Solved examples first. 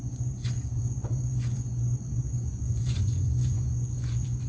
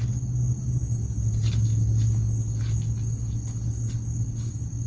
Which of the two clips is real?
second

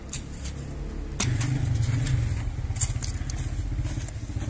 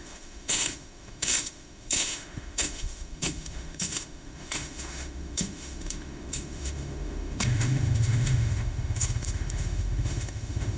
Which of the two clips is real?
first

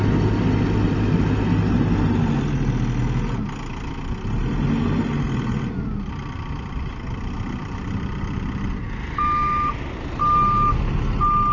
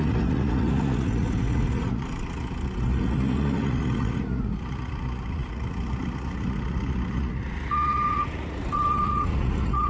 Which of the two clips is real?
first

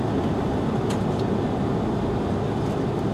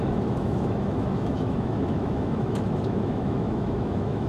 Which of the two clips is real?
first